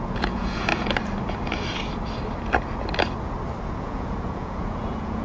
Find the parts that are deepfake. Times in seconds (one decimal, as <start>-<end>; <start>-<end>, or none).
0.0-0.7; 3.8-5.2